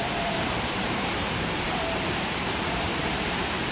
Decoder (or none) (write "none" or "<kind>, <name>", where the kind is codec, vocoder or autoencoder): vocoder, BigVGAN v2